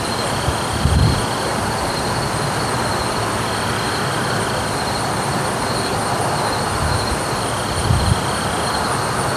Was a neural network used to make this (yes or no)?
no